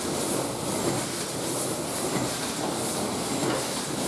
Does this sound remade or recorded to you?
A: recorded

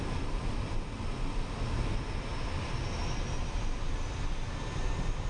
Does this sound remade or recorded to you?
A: recorded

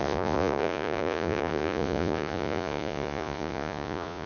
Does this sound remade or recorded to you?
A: remade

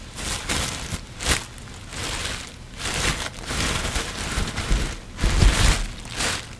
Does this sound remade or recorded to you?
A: recorded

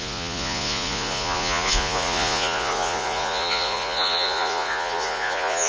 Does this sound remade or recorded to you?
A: remade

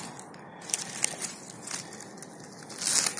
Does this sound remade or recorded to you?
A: recorded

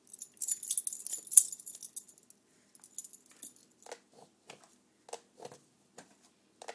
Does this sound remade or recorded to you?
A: recorded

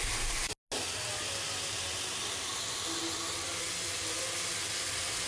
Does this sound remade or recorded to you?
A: recorded